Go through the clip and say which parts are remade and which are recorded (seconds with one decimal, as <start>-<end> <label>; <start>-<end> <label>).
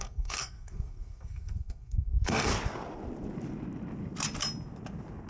0.0-2.5 remade; 2.5-5.3 recorded